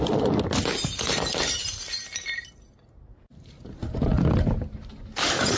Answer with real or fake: real